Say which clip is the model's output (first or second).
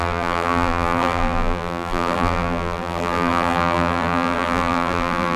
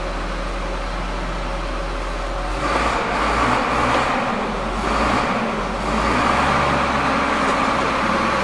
first